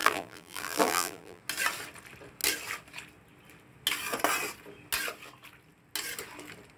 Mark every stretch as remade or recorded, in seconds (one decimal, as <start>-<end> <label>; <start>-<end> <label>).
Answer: 0.0-1.4 remade; 1.4-6.8 recorded